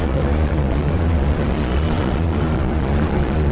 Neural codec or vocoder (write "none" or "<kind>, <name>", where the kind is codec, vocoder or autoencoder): vocoder, Vocos